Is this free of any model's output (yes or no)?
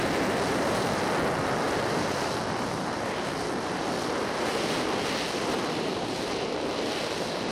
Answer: no